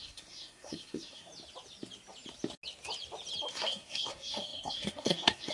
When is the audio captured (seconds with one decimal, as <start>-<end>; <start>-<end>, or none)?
1.3-3.5